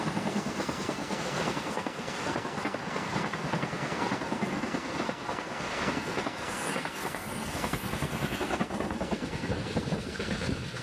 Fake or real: fake